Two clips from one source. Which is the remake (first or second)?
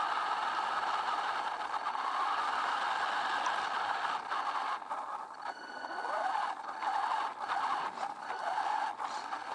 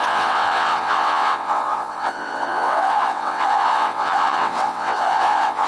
second